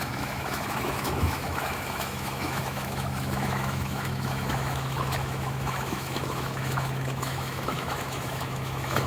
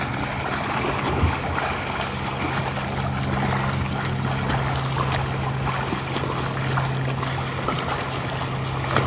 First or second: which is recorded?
second